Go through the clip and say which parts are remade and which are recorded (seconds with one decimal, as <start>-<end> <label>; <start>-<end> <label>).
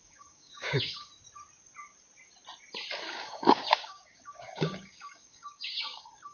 0.0-1.1 remade; 1.1-3.0 recorded; 3.0-6.3 remade